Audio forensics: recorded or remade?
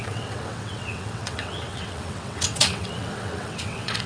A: remade